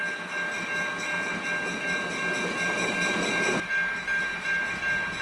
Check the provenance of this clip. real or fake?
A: real